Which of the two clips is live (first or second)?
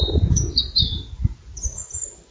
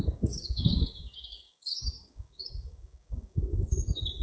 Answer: first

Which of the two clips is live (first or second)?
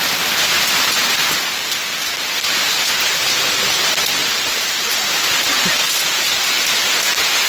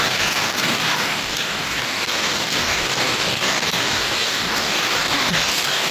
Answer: first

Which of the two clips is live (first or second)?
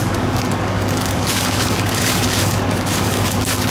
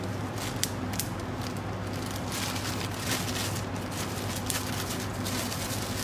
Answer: second